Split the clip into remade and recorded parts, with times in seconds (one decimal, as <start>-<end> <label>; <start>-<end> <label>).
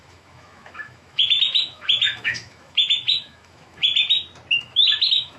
0.0-3.9 remade; 3.9-4.6 recorded; 4.6-5.4 remade